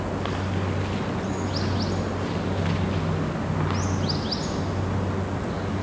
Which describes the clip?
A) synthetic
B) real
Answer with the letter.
B